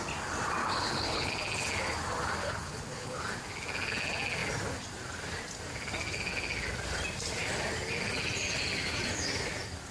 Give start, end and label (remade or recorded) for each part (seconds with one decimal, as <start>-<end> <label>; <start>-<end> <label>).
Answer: 0.0-0.6 recorded; 0.6-1.3 remade; 1.3-2.4 recorded; 2.4-3.2 remade; 3.2-9.9 recorded